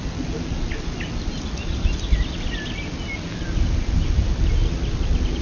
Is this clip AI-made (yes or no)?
no